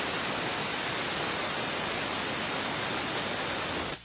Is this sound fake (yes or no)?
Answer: no